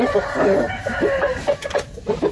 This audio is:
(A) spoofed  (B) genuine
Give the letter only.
A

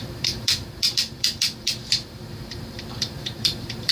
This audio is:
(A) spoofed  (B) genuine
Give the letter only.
A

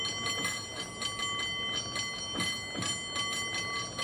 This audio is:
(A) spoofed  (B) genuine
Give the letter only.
B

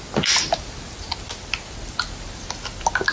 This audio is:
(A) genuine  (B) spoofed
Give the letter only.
A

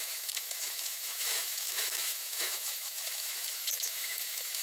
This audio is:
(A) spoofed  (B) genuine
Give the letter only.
A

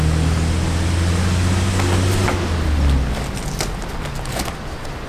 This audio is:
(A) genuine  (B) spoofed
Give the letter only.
A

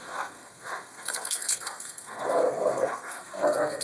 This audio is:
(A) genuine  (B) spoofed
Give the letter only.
B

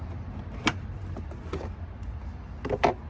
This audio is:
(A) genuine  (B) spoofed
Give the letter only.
A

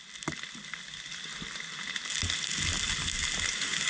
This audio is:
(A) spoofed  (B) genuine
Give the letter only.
B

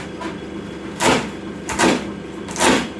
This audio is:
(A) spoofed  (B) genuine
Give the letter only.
B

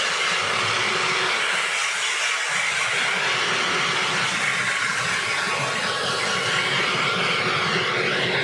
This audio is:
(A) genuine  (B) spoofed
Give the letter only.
A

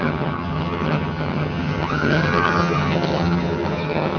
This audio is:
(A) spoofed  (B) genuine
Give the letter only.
A